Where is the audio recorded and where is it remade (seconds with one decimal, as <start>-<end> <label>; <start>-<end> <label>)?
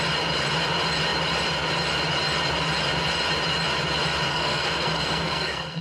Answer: 0.0-4.3 recorded; 4.3-5.8 remade